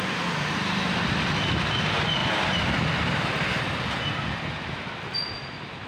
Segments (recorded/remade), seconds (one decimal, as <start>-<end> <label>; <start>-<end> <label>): 0.0-5.9 recorded